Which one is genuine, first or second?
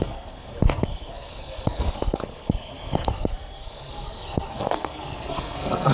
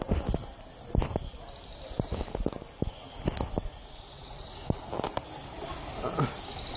second